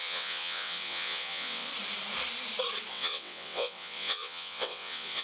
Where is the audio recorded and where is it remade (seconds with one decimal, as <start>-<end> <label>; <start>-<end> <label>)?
0.0-1.7 remade; 1.7-2.9 recorded; 2.9-5.2 remade